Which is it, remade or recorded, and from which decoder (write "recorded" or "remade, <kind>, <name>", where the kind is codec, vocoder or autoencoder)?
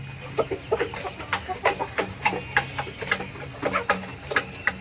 recorded